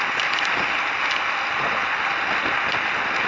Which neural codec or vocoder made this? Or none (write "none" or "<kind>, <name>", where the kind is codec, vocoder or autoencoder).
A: none